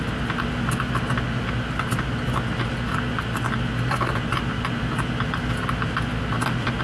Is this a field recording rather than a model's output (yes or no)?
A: yes